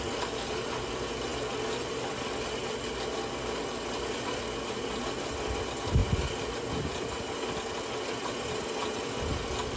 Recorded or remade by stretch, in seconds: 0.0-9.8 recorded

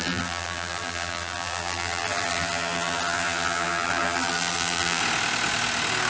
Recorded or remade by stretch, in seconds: 0.0-5.0 remade; 5.0-6.1 recorded

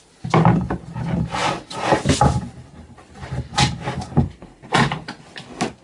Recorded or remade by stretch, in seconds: 0.0-5.8 recorded

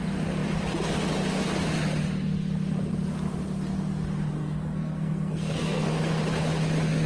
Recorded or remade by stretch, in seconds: 0.0-4.4 recorded; 4.4-6.1 remade; 6.1-7.1 recorded

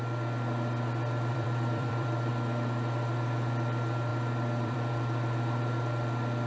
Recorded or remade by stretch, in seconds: 0.0-1.3 recorded; 1.3-2.3 remade; 2.3-4.1 recorded; 4.1-4.9 remade; 4.9-6.5 recorded

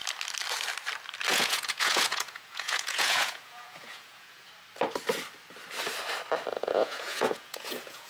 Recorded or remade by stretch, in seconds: 0.0-1.3 recorded; 1.3-4.5 remade; 4.5-6.5 recorded; 6.5-8.1 remade